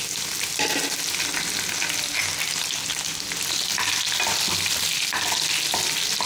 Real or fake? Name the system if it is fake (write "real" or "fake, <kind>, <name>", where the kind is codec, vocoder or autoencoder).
real